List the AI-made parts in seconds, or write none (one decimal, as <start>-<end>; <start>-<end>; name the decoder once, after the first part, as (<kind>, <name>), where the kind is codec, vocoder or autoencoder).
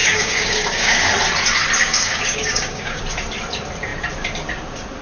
0.0-1.1 (codec, DAC); 1.8-3.0